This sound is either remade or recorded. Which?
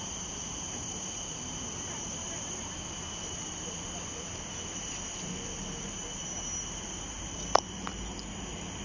recorded